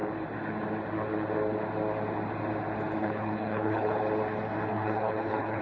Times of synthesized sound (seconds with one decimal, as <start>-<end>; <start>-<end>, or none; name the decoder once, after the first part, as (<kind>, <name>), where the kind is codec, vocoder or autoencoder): 3.0-4.0 (codec, HILCodec); 4.7-5.6